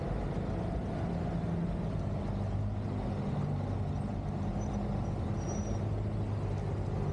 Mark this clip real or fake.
real